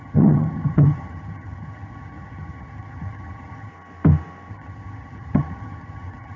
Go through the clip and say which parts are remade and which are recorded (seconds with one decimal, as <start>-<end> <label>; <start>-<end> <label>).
0.0-3.7 remade; 3.7-4.5 recorded; 4.5-6.4 remade

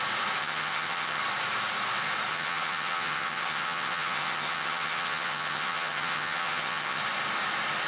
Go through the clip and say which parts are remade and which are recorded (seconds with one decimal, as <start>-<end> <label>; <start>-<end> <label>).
0.0-0.4 recorded; 0.4-1.2 remade; 1.2-2.3 recorded; 2.3-7.0 remade; 7.0-7.9 recorded

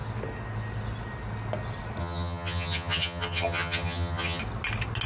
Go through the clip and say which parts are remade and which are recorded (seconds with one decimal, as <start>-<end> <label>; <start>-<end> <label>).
0.0-2.0 recorded; 2.0-4.4 remade; 4.4-5.1 recorded

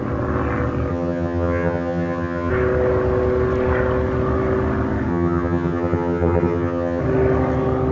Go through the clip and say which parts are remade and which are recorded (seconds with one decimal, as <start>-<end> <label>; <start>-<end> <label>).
0.0-0.9 recorded; 0.9-2.5 remade; 2.5-5.1 recorded; 5.1-7.0 remade; 7.0-7.9 recorded